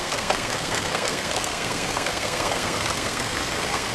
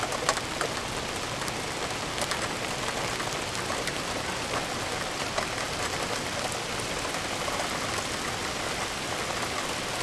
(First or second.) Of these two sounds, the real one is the second